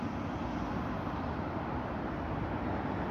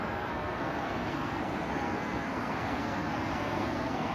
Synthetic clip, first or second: second